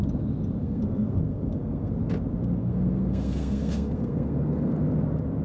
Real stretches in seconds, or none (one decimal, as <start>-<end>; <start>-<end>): 0.0-0.6; 1.9-2.6; 4.8-5.4